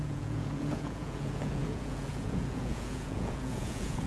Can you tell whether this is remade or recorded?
remade